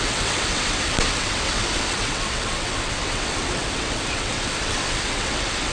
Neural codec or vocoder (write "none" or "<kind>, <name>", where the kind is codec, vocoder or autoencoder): vocoder, WaveNeXt